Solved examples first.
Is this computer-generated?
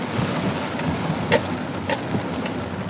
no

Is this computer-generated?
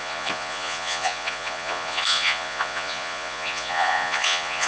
yes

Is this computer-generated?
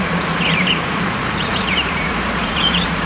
yes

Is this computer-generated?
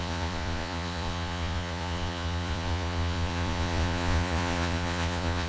yes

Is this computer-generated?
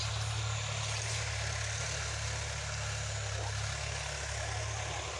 no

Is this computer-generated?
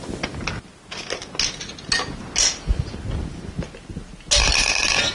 no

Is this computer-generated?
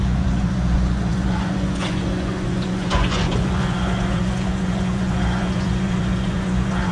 yes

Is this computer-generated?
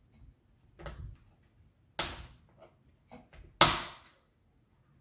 no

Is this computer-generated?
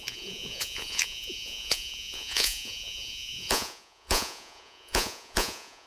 yes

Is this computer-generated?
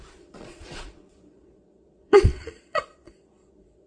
yes